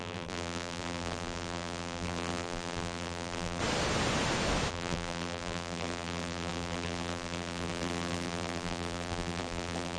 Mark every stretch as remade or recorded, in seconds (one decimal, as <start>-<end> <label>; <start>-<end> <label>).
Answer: 0.0-3.6 remade; 3.6-4.7 recorded; 4.7-10.0 remade